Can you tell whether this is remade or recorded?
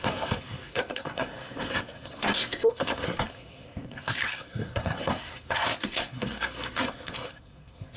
remade